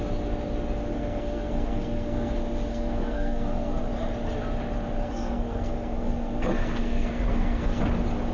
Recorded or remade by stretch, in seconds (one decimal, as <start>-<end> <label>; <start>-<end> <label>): 0.0-0.9 recorded; 0.9-2.3 remade; 2.3-2.7 recorded; 2.7-3.8 remade; 3.8-5.0 recorded; 5.0-7.8 remade; 7.8-8.3 recorded